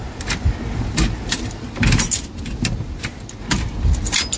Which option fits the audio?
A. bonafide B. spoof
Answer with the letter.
A